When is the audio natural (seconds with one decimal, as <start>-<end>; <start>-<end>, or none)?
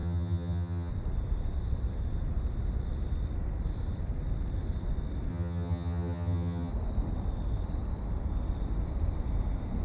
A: 0.9-5.3; 6.7-9.8